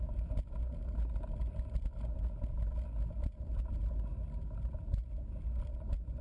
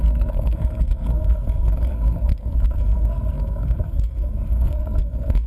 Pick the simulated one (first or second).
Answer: second